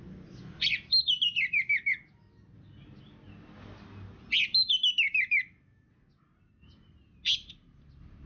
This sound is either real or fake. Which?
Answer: real